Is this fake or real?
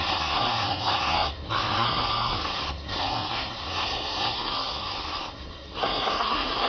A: fake